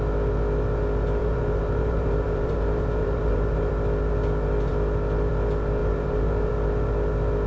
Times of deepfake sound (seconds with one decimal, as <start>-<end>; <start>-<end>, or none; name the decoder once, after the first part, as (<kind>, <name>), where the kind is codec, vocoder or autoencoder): 1.2-3.7 (vocoder, BigVGAN v2); 5.8-6.5